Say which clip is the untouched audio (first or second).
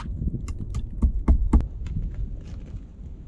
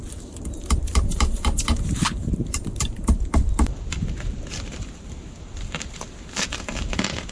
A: first